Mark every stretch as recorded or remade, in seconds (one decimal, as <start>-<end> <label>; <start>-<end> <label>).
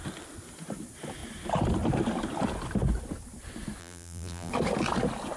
0.0-3.8 recorded; 3.8-4.5 remade; 4.5-5.4 recorded